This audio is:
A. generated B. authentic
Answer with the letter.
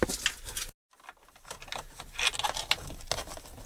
B